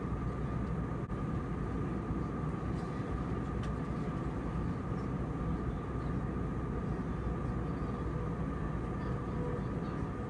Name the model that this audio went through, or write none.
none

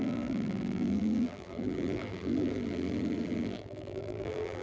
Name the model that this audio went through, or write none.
vocoder, BigVGAN v2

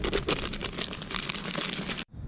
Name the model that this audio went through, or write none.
vocoder, BigVGAN v2